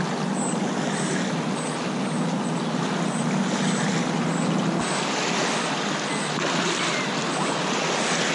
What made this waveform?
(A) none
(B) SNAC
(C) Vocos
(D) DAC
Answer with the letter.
A